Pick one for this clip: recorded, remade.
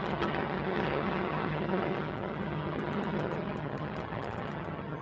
remade